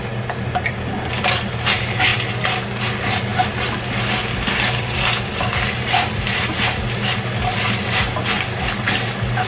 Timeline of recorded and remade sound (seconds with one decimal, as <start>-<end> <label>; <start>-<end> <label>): 0.0-9.5 recorded